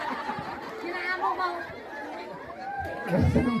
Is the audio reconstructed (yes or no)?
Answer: no